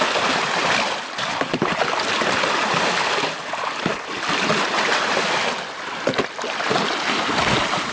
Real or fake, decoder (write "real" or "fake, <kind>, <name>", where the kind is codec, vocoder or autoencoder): real